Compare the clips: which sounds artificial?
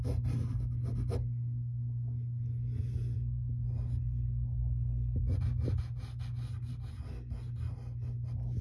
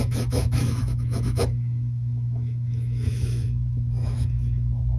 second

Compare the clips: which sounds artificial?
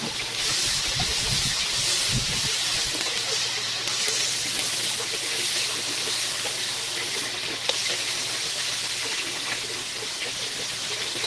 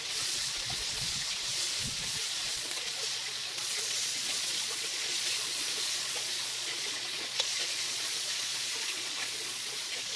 second